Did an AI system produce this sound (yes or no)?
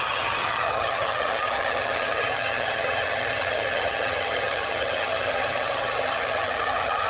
yes